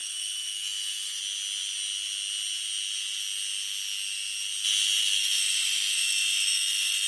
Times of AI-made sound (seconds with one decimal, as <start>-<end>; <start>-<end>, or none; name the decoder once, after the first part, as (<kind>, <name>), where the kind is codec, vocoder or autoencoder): 0.0-1.2 (autoencoder, DAC-VAE); 5.0-7.1